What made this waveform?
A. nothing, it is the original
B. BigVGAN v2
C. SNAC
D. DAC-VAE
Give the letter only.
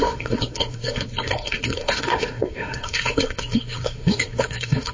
C